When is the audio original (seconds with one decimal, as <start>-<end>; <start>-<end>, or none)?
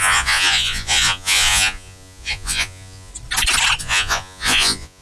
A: 3.1-3.8